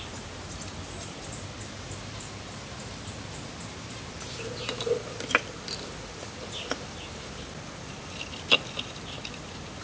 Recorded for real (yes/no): yes